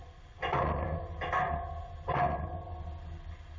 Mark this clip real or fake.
real